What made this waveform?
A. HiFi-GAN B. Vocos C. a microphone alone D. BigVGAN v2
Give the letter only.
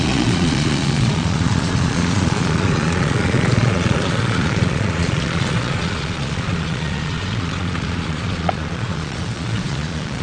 B